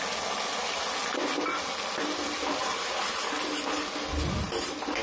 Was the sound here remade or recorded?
recorded